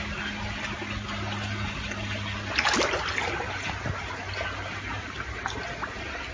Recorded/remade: recorded